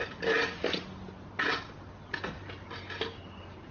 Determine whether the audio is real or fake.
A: real